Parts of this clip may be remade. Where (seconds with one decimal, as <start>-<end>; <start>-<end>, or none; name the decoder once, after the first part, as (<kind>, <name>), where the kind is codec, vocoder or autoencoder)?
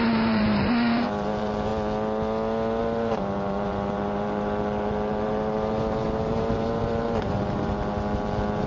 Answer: 0.0-1.7 (vocoder, BigVGAN v2); 2.8-8.7